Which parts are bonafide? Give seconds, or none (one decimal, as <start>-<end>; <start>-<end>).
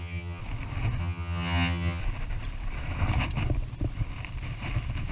0.4-1.0; 2.0-5.1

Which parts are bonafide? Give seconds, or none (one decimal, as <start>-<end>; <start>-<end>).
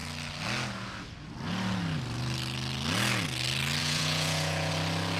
0.0-3.8; 4.7-5.2